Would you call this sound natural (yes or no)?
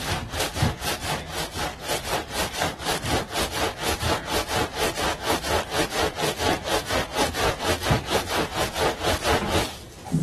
yes